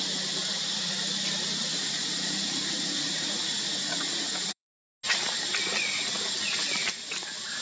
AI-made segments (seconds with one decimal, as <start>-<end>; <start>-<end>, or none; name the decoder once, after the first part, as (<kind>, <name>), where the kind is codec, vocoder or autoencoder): 0.4-0.9 (vocoder, Vocos); 1.7-4.8